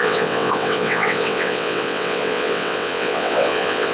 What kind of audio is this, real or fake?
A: fake